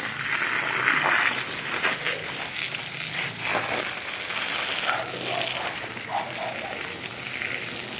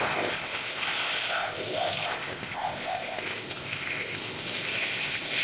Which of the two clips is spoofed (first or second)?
second